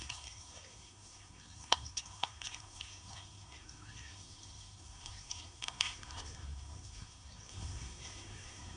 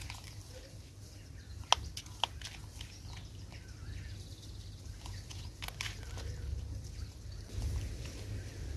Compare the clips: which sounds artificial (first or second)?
first